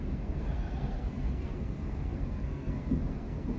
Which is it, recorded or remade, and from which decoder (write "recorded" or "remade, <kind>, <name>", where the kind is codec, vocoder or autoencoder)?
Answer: remade, codec, SNAC